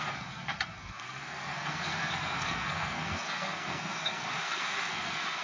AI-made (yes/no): yes